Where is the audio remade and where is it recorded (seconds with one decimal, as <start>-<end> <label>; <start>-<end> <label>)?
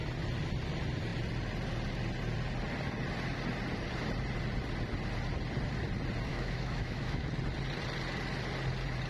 0.0-6.3 recorded; 6.3-7.3 remade; 7.3-9.1 recorded